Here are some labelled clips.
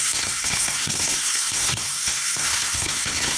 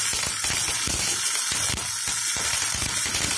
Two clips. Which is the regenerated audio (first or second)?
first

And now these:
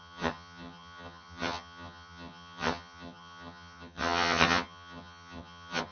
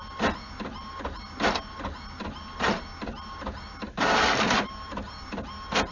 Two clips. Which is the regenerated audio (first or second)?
first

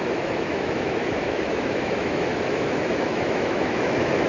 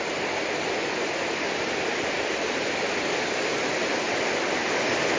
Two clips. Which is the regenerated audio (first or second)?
first